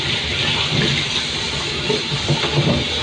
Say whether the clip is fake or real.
real